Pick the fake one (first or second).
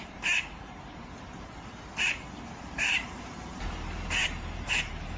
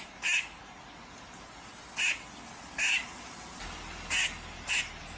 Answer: first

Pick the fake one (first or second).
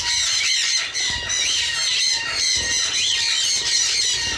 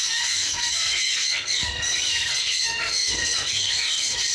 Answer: second